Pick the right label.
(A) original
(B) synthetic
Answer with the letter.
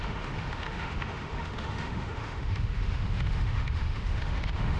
B